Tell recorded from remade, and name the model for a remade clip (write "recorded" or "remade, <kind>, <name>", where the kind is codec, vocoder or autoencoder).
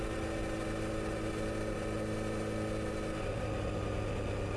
recorded